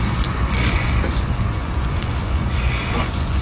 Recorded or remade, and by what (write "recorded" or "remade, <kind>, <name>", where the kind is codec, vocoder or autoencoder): remade, vocoder, Vocos